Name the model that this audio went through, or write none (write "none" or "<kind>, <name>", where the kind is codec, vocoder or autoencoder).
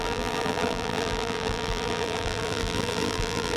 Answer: vocoder, BigVGAN v2